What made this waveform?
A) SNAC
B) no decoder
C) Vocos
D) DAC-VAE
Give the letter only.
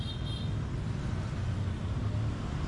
B